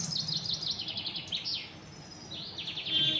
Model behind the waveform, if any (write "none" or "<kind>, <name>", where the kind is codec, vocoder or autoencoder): none